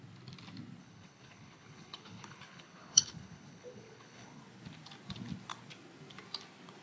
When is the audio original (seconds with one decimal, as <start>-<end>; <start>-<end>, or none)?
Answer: 0.0-0.8; 4.4-6.8